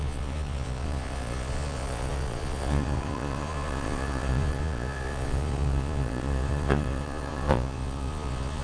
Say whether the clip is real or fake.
fake